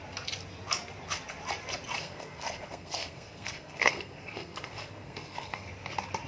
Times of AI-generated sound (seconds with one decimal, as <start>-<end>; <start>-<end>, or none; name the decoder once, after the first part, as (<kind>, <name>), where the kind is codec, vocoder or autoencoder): 2.0-5.7 (codec, SNAC)